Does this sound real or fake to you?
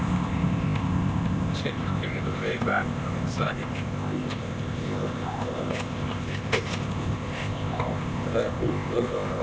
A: fake